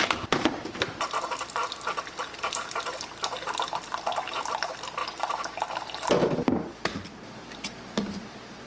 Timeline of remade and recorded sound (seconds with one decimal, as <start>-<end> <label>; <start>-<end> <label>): 0.0-5.0 remade; 5.0-5.7 recorded; 5.7-8.7 remade